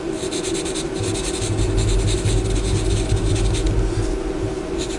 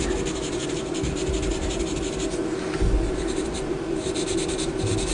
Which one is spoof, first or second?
second